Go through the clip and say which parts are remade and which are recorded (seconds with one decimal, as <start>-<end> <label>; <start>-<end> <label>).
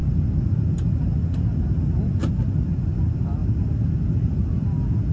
0.0-5.1 recorded